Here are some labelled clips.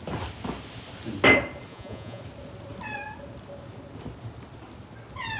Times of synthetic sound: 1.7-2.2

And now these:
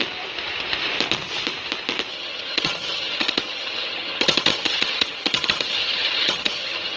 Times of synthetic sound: 2.1-7.0

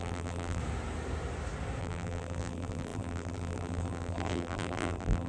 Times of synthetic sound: 0.0-0.6; 1.8-5.3

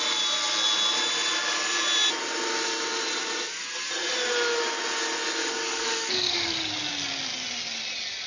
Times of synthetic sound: 5.4-6.7

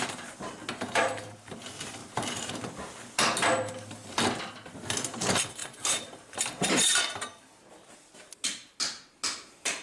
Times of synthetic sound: 2.0-2.5; 5.6-8.1

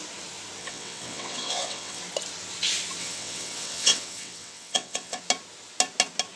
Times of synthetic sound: 0.6-2.0; 3.0-5.2

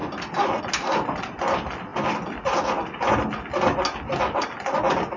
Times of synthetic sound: none

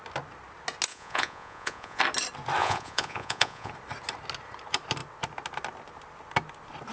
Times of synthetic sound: 0.9-2.0; 2.6-3.7